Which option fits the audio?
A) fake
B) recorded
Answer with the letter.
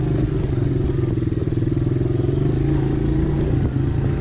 B